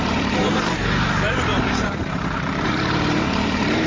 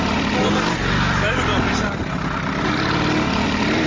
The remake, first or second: first